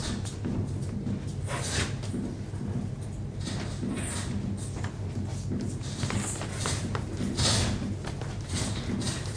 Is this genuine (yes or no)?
yes